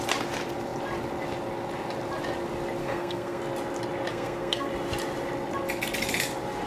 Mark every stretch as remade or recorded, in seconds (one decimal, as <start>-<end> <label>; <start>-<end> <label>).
0.0-2.8 recorded; 2.8-3.4 remade; 3.4-4.1 recorded; 4.1-4.7 remade; 4.7-6.7 recorded